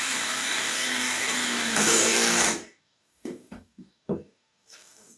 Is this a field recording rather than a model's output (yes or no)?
no